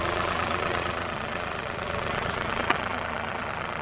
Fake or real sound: fake